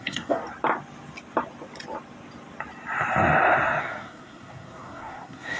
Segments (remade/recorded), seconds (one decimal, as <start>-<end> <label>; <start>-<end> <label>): 0.0-0.4 remade; 0.4-3.8 recorded; 3.8-5.6 remade